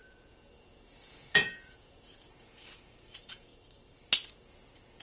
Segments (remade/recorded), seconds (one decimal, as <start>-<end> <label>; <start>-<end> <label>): 0.0-3.5 remade; 3.5-4.3 recorded; 4.3-5.0 remade